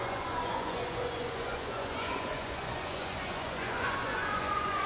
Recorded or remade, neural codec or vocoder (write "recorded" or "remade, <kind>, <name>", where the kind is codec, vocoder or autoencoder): remade, vocoder, Vocos